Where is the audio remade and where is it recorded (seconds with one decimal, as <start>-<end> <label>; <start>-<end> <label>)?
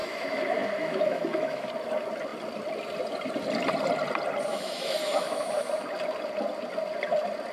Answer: 0.0-1.7 remade; 1.7-4.5 recorded; 4.5-5.7 remade; 5.7-7.5 recorded